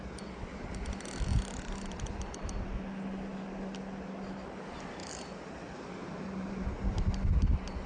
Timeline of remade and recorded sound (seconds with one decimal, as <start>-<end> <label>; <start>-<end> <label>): 0.0-5.0 recorded; 5.0-5.6 remade; 5.6-6.0 recorded; 6.0-7.3 remade; 7.3-7.9 recorded